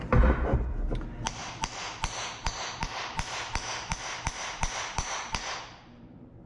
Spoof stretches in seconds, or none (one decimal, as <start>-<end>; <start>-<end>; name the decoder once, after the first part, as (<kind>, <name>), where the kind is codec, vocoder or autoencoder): 2.4-6.5 (vocoder, BigVGAN v2)